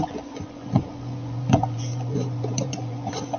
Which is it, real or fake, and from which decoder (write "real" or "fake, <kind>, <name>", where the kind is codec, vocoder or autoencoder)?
fake, vocoder, Vocos